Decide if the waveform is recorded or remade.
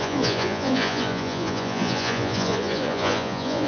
remade